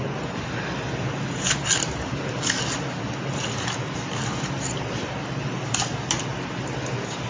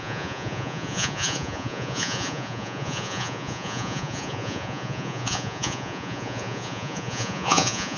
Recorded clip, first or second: first